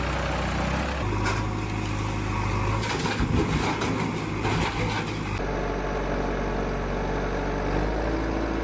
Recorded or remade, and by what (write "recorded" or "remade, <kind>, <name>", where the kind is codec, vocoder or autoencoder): recorded